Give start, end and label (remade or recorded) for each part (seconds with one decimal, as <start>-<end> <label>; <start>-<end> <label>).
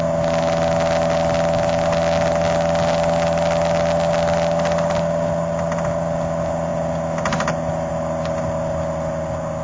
0.0-9.6 recorded